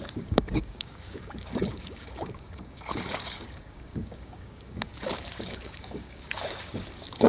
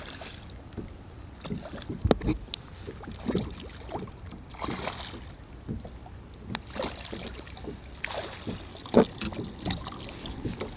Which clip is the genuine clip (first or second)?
second